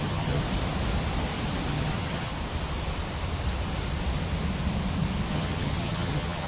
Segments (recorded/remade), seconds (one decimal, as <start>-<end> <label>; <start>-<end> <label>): 0.0-0.4 remade; 0.4-1.7 recorded; 1.7-2.3 remade; 2.3-5.3 recorded; 5.3-6.5 remade